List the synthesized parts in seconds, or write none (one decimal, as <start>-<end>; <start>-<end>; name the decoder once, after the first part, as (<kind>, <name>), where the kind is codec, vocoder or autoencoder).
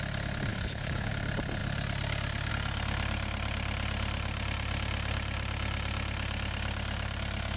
0.5-1.1 (codec, HILCodec)